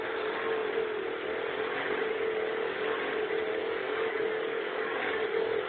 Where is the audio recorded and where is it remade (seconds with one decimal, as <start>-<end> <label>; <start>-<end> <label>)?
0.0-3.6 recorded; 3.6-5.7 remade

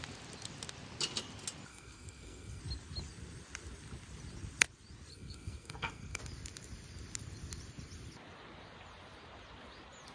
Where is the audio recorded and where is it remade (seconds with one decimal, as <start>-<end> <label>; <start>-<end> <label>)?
0.0-1.7 recorded; 1.7-2.6 remade; 2.6-5.1 recorded; 5.1-6.2 remade; 6.2-10.1 recorded

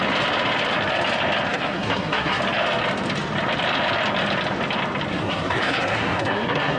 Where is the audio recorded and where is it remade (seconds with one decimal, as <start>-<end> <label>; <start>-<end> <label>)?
0.0-1.5 recorded; 1.5-2.4 remade; 2.4-5.1 recorded; 5.1-6.8 remade

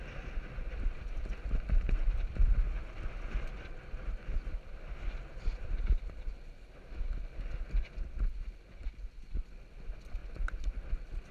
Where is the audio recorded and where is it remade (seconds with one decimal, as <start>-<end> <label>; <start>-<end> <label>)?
0.0-11.3 recorded

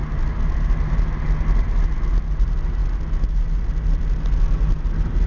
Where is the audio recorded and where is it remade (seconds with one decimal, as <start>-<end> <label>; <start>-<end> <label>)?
0.0-5.3 recorded

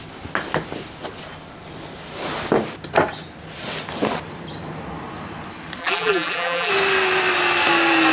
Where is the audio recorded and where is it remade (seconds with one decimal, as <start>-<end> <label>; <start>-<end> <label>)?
0.0-5.8 recorded; 5.8-6.7 remade; 6.7-8.1 recorded